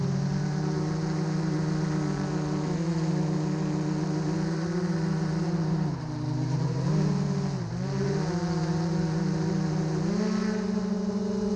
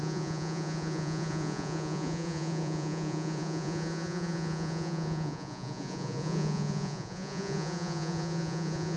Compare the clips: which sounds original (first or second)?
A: first